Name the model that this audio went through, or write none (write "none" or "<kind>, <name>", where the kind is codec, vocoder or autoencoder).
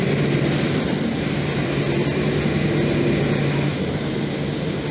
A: none